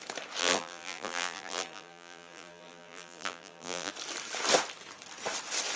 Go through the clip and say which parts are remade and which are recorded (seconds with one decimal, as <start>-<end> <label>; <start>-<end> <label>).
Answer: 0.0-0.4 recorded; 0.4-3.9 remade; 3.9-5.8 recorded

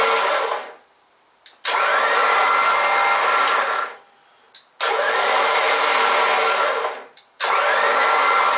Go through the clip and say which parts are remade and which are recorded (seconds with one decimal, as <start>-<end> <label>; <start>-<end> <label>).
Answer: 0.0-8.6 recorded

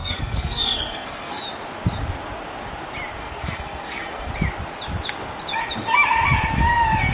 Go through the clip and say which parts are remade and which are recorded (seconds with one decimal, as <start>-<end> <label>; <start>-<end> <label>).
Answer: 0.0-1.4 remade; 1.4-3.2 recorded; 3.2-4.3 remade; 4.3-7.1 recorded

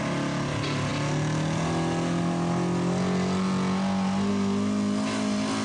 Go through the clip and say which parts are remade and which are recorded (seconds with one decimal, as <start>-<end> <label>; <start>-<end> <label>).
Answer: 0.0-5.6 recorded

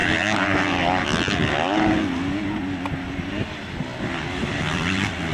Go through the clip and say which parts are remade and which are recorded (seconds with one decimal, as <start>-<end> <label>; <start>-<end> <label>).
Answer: 0.0-2.9 recorded; 2.9-5.3 remade

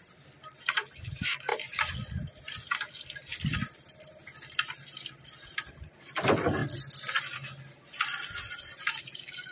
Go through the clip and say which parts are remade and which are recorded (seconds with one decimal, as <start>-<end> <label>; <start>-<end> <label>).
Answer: 0.0-1.5 remade; 1.5-3.0 recorded; 3.0-6.6 remade; 6.6-7.2 recorded; 7.2-9.5 remade